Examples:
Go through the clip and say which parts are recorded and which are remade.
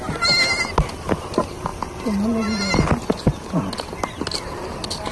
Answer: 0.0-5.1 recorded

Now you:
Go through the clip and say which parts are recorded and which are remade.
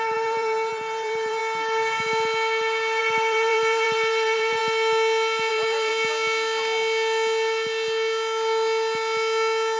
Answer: 0.0-1.4 remade; 1.4-3.0 recorded; 3.0-4.6 remade; 4.6-5.5 recorded; 5.5-5.9 remade; 5.9-9.8 recorded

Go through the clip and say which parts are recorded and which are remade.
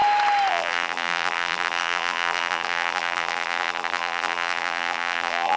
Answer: 0.0-0.5 recorded; 0.5-5.6 remade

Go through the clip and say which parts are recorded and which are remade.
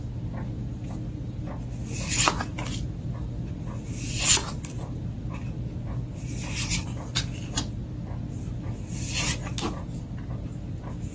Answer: 0.0-2.5 recorded; 2.5-3.5 remade; 3.5-4.4 recorded; 4.4-5.1 remade; 5.1-11.1 recorded